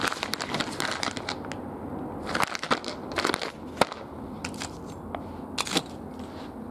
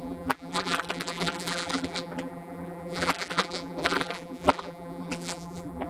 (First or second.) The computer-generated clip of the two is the second